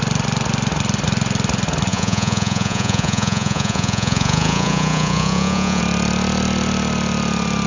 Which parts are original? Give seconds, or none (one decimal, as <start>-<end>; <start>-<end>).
0.0-1.9; 5.8-7.7